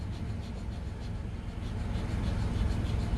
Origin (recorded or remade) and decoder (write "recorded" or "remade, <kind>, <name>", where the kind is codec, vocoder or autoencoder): recorded